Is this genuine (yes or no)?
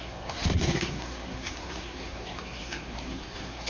no